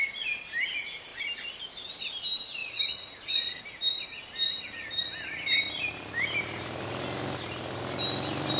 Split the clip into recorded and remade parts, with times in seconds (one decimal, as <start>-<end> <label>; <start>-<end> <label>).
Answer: 0.0-2.6 recorded; 2.6-3.6 remade; 3.6-8.6 recorded